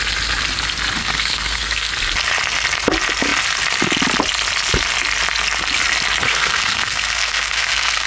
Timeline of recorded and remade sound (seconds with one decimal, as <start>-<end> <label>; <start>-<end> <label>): 0.0-1.0 recorded; 1.0-1.9 remade; 1.9-6.3 recorded; 6.3-8.1 remade